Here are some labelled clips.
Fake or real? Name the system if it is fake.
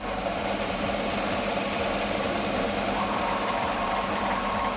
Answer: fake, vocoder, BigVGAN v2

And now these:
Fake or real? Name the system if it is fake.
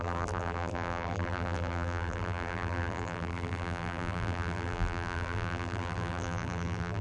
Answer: fake, vocoder, BigVGAN v2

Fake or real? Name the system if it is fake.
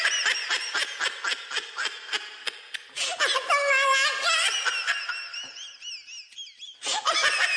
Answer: real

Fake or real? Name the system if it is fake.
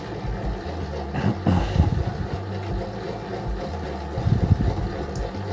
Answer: real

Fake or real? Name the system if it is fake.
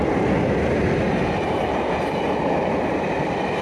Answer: real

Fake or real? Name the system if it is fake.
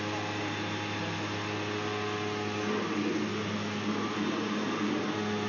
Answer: real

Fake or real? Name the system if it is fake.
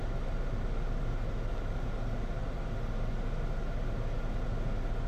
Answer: real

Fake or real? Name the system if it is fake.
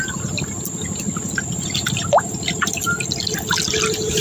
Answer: fake, vocoder, BigVGAN v2